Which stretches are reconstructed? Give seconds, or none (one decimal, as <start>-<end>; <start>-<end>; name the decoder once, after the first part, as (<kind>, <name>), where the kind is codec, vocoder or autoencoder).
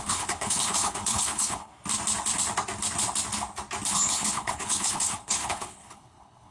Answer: 0.0-1.7 (codec, HILCodec); 3.9-6.5